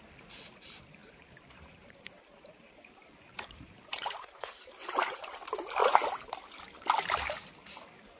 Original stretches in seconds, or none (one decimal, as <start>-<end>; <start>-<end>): 0.0-1.0; 5.3-8.2